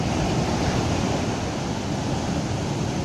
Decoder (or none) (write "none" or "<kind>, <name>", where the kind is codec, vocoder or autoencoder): none